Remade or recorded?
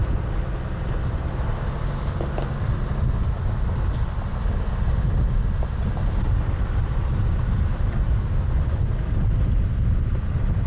recorded